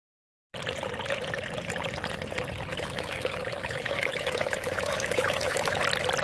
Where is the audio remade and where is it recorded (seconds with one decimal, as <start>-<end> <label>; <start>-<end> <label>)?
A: 0.0-2.7 recorded; 2.7-5.8 remade; 5.8-6.2 recorded